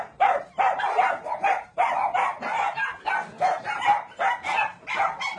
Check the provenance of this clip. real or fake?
fake